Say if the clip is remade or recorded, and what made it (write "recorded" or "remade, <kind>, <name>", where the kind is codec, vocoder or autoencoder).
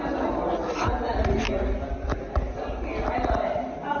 recorded